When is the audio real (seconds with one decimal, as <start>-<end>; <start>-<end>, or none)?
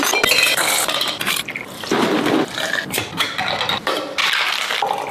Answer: 0.0-5.1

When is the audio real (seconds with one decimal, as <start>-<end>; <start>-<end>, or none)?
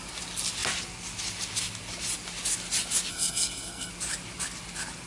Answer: 0.0-3.1; 3.9-5.1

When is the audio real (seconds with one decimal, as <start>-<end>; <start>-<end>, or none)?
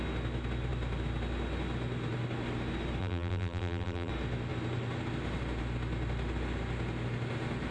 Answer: 0.0-3.0; 4.1-7.7